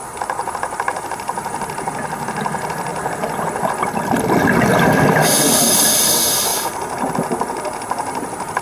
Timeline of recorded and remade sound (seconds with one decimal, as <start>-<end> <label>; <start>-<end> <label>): 0.0-6.5 recorded; 6.5-8.6 remade